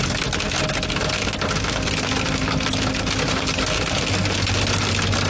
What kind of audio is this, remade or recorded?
recorded